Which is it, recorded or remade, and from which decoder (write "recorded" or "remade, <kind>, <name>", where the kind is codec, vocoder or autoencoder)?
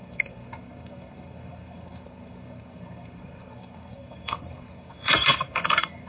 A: remade, codec, SNAC